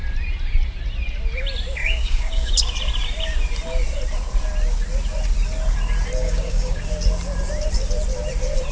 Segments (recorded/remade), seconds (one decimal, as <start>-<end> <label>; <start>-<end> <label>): 0.0-1.8 recorded; 1.8-2.5 remade; 2.5-6.2 recorded; 6.2-6.8 remade; 6.8-8.7 recorded